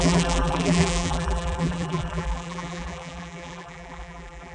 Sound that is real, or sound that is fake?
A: fake